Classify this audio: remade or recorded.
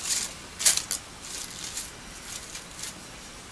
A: recorded